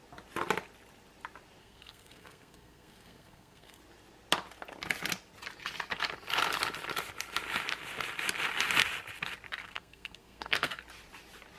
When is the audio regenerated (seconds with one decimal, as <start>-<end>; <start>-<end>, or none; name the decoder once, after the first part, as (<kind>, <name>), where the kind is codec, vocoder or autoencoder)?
1.6-3.8 (codec, SNAC); 9.6-10.8